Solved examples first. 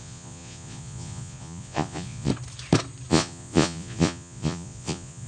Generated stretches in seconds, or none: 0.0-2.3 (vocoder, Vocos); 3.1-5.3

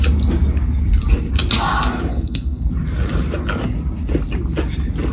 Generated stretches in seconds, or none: 2.1-2.7 (codec, SNAC)

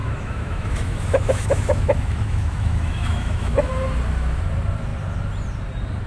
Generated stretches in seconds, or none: 0.0-3.7 (autoencoder, DAC-VAE)

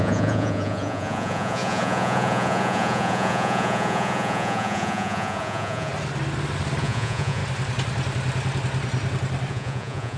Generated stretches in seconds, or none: 0.0-5.9 (vocoder, Vocos); 6.8-7.4; 9.5-10.2

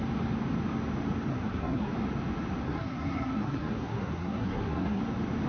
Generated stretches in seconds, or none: 1.3-1.9 (codec, SNAC); 2.6-5.0